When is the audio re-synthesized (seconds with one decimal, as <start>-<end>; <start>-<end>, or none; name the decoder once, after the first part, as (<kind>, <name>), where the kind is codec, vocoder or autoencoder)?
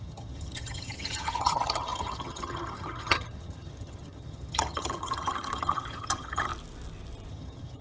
0.0-6.5 (vocoder, HiFi-GAN); 7.3-7.8